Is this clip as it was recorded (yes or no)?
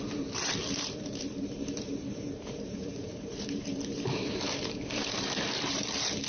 no